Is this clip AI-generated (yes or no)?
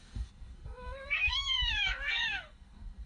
yes